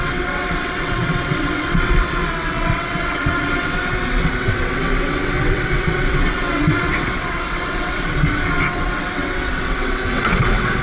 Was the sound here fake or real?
fake